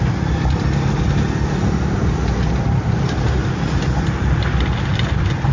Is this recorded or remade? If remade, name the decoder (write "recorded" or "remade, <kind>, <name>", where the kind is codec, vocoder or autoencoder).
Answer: recorded